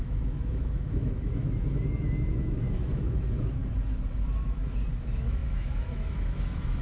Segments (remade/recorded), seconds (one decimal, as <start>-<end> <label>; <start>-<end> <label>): 0.0-3.6 remade; 3.6-5.0 recorded; 5.0-6.8 remade

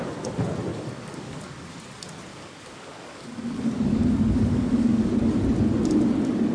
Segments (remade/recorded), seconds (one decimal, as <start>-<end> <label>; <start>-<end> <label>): 0.0-0.7 recorded; 0.7-1.7 remade; 1.7-2.3 recorded; 2.3-5.1 remade; 5.1-6.5 recorded

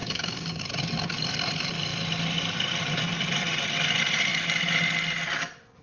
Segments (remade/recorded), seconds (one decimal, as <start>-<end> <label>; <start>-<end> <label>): 0.0-0.6 remade; 0.6-5.8 recorded

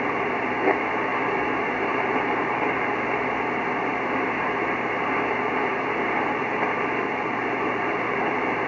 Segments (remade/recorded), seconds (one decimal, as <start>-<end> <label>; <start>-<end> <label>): 0.0-8.7 recorded

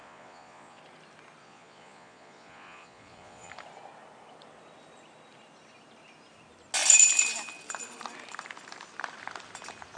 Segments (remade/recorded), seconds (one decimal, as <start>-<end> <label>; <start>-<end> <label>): 0.0-0.8 remade; 0.8-1.4 recorded; 1.4-3.5 remade; 3.5-10.0 recorded

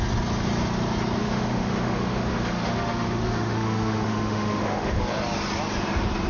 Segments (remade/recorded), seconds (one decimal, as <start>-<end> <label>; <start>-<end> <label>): 0.0-1.2 recorded; 1.2-5.0 remade; 5.0-6.3 recorded

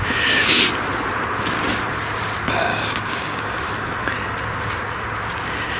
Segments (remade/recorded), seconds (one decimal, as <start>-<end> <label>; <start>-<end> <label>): 0.0-2.7 recorded; 2.7-3.6 remade; 3.6-5.8 recorded

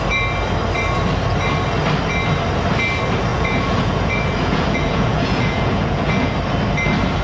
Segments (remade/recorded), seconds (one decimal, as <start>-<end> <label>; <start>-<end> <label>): 0.0-3.3 recorded; 3.3-6.3 remade; 6.3-7.2 recorded